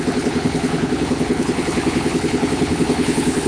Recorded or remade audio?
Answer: remade